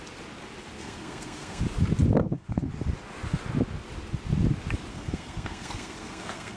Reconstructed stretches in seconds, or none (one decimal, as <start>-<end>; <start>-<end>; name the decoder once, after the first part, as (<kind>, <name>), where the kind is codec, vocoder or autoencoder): 0.8-1.6 (codec, SNAC); 2.2-2.7; 4.9-6.6